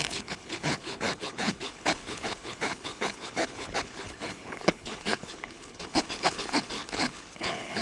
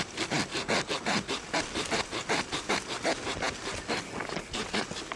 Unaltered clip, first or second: second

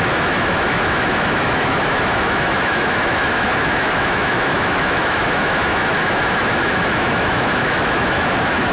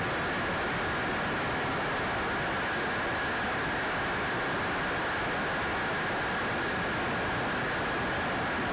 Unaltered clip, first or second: second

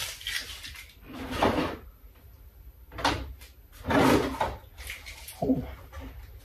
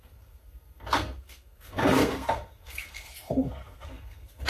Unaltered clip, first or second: first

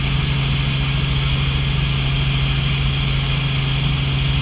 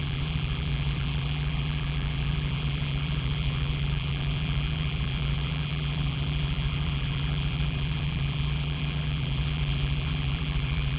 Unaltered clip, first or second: first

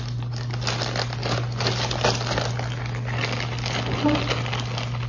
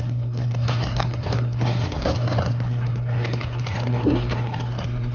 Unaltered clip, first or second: first